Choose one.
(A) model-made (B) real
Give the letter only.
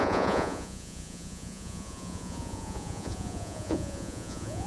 A